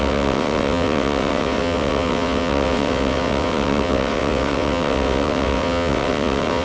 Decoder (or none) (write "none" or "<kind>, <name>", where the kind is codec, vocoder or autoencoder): vocoder, WaveNeXt